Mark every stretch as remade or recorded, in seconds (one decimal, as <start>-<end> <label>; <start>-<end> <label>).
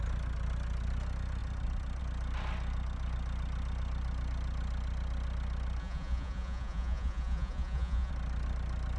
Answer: 0.0-5.8 recorded; 5.8-8.1 remade; 8.1-9.0 recorded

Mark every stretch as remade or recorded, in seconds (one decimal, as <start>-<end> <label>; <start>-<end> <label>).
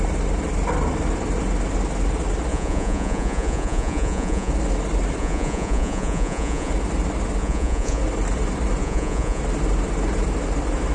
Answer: 0.0-2.5 recorded; 2.5-4.5 remade; 4.5-5.2 recorded; 5.2-6.7 remade; 6.7-7.4 recorded; 7.4-8.0 remade; 8.0-8.8 recorded; 8.8-9.4 remade; 9.4-10.9 recorded